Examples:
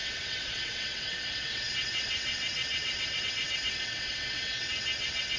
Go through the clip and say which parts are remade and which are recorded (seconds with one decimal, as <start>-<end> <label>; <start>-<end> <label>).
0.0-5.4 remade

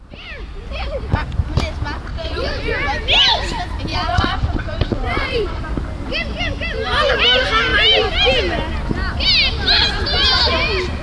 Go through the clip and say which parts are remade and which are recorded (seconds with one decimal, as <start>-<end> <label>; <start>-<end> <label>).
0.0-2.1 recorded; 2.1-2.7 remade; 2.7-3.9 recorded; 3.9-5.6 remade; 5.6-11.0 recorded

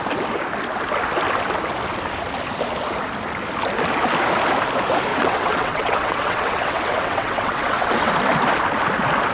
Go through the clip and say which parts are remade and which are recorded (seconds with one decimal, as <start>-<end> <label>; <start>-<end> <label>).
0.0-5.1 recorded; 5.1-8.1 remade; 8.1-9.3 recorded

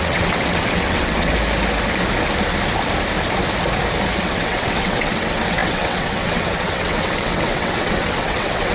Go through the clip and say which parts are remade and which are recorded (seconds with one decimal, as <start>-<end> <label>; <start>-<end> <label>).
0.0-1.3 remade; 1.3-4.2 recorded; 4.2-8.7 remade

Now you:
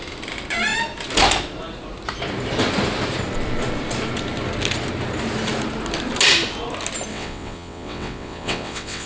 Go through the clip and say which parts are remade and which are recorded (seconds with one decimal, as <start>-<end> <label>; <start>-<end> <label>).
0.0-7.1 recorded; 7.1-9.1 remade

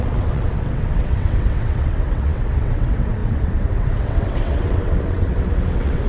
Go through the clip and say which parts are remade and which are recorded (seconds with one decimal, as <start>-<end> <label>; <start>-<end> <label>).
0.0-6.1 remade